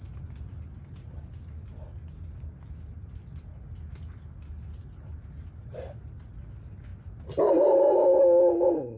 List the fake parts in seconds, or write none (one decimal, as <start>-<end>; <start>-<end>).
none